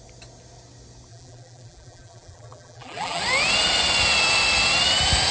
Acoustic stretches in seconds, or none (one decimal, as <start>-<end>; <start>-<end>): 0.0-1.1; 3.2-5.3